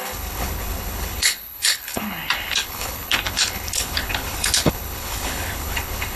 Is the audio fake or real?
fake